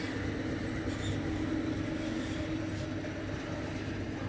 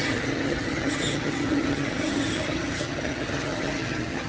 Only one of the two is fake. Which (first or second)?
second